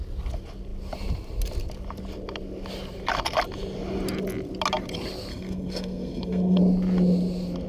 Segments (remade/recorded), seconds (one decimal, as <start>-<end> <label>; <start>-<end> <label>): 0.0-5.3 recorded; 5.3-6.6 remade; 6.6-7.7 recorded